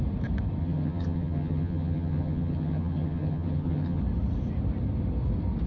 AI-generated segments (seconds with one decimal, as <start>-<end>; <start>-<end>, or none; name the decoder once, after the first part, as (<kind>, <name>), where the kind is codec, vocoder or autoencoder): 0.6-4.0 (vocoder, HiFi-GAN)